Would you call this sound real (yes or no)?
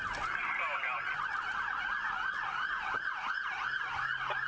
yes